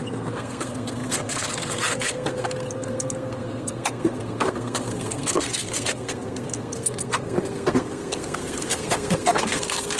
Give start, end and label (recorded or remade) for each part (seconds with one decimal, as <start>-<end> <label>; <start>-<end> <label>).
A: 0.0-10.0 remade